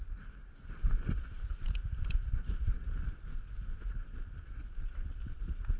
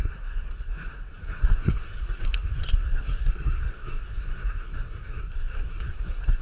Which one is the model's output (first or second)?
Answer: second